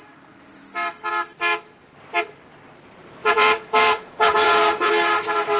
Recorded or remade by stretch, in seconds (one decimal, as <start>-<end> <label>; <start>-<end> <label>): 0.0-3.2 recorded; 3.2-4.9 remade; 4.9-5.6 recorded

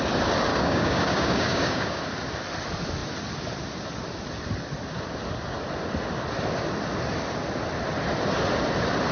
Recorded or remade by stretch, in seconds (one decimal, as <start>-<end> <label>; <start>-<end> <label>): 0.0-0.5 recorded; 0.5-2.0 remade; 2.0-9.1 recorded

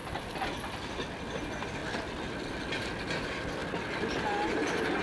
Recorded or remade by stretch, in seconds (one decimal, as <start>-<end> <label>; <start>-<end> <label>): 0.0-1.1 remade; 1.1-1.8 recorded; 1.8-2.9 remade; 2.9-3.6 recorded; 3.6-4.2 remade; 4.2-5.0 recorded